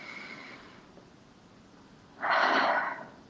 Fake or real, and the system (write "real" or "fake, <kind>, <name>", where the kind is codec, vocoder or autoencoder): real